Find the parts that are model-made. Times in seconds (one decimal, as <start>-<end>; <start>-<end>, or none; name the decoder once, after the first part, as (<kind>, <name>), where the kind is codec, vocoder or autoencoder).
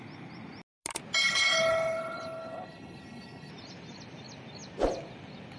1.2-3.5 (codec, HILCodec)